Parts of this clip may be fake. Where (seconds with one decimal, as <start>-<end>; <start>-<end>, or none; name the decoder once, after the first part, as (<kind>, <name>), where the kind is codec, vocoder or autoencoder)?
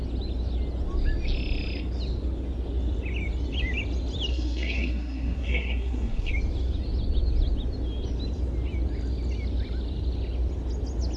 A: 4.3-6.3 (codec, SNAC)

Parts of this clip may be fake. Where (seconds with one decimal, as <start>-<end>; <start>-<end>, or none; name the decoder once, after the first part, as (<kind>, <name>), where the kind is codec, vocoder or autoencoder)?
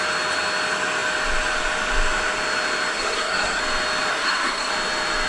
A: 2.9-3.6 (codec, SNAC); 4.1-4.7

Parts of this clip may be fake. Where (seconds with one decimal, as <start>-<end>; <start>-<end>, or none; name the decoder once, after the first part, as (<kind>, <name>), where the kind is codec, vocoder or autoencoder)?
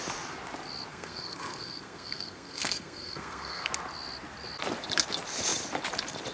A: 0.9-3.7 (codec, SNAC)